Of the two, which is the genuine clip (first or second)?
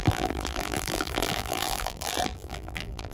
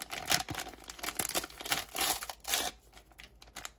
second